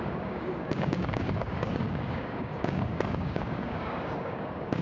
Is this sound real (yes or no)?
no